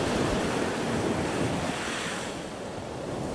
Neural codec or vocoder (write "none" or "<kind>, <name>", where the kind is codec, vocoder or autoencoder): none